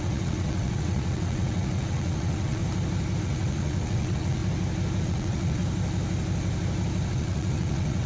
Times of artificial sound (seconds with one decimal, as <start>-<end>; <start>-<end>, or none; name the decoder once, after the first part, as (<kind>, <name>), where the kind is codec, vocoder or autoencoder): 0.0-2.6 (vocoder, WaveNeXt); 3.2-4.4; 5.0-5.6; 7.1-8.1